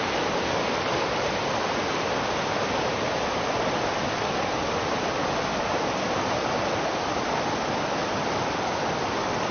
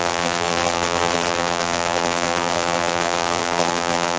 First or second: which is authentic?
first